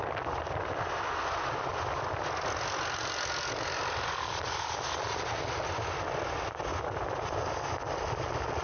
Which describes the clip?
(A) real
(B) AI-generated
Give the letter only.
A